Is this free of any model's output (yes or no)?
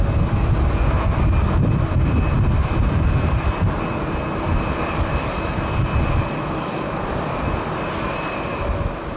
yes